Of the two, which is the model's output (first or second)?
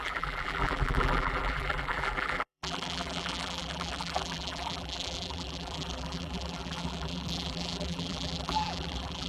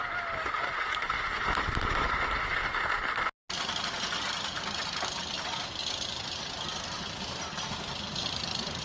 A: first